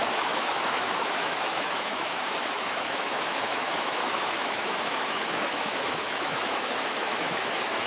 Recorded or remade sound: remade